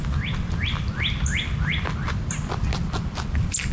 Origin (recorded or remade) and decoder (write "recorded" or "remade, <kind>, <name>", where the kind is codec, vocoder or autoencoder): recorded